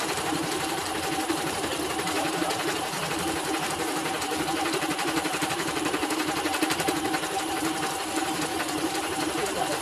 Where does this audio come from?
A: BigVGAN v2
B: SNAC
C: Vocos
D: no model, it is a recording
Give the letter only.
A